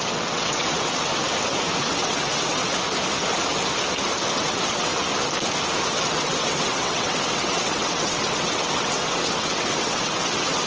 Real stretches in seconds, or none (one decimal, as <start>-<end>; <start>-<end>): 1.2-1.8; 2.6-4.3; 4.9-5.9